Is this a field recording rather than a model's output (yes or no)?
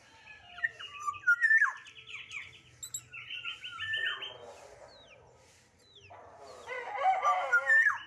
yes